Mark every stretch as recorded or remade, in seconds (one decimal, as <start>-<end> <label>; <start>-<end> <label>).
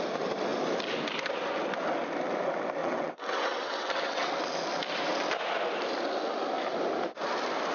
0.0-2.8 recorded; 2.8-4.3 remade; 4.3-7.7 recorded